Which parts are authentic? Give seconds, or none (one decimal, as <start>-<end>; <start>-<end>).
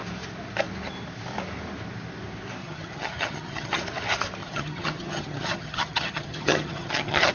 0.0-2.6; 3.8-4.4